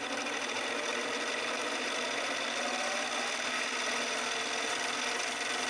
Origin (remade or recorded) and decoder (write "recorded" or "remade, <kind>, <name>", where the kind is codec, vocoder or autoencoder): recorded